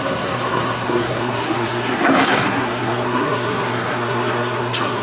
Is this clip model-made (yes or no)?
yes